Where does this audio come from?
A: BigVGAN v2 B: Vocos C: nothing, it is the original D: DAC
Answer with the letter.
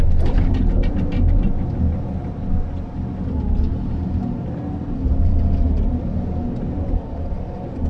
C